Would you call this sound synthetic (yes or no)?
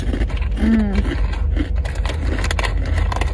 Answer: no